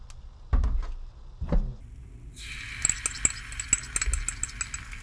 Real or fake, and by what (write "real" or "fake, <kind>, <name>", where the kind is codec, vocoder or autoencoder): real